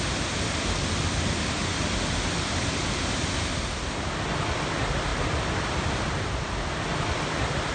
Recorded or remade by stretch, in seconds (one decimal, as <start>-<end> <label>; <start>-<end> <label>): 0.0-7.7 recorded